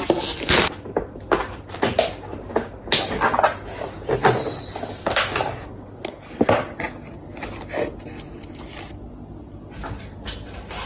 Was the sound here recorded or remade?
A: recorded